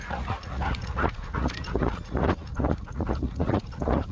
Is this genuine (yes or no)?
no